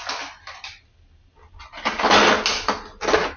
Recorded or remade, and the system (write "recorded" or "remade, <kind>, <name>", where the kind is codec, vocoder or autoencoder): recorded